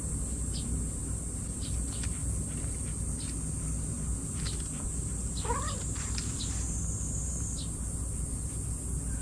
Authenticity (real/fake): real